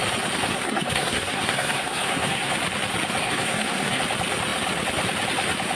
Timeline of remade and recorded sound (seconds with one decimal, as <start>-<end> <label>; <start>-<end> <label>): 0.0-0.5 recorded; 0.5-2.5 remade; 2.5-3.2 recorded; 3.2-4.0 remade; 4.0-5.7 recorded